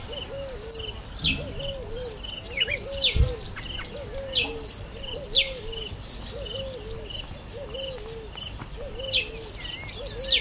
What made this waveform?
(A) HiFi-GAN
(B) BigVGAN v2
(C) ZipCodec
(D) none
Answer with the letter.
D